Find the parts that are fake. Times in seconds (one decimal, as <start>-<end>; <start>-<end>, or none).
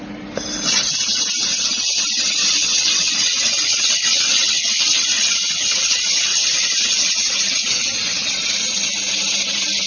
2.4-6.0; 6.9-8.4